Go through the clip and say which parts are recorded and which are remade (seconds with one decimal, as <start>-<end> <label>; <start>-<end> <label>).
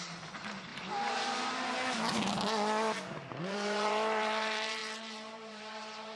0.0-0.7 remade; 0.7-3.4 recorded; 3.4-6.2 remade